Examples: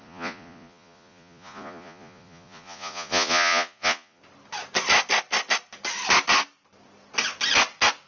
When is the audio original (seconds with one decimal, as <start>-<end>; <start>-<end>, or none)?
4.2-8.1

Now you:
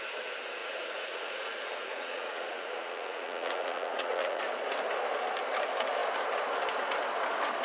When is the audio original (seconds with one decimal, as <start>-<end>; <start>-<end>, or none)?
0.0-0.6; 4.4-7.6

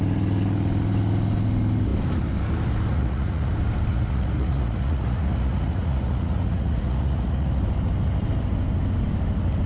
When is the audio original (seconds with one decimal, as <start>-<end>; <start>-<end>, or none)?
0.0-2.9; 3.5-3.9; 7.6-9.7

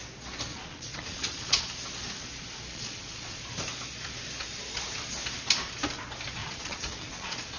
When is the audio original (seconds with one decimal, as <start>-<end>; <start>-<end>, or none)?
0.0-0.5; 1.6-2.7; 3.4-6.4

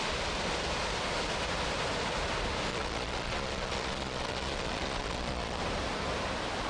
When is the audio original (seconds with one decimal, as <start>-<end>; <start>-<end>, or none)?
0.0-2.7; 5.6-6.7

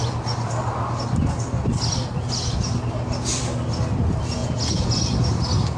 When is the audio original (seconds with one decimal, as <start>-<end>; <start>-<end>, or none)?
0.0-4.4; 4.9-5.8